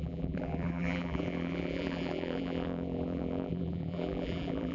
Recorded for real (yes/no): no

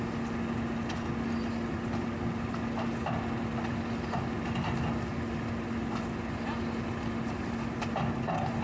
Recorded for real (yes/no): yes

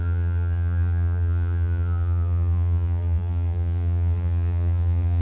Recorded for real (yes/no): no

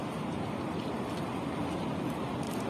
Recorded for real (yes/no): no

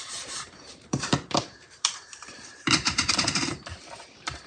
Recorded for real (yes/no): no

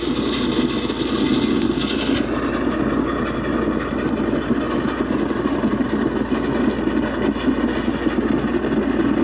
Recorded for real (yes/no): yes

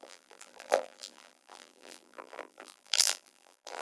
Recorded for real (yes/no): no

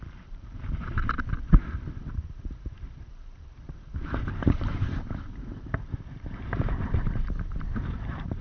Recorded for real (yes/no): no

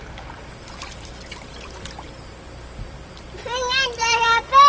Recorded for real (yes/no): no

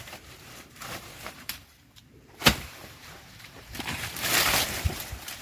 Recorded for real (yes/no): no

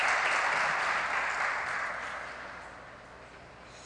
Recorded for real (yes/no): yes